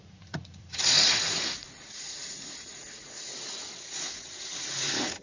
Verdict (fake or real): fake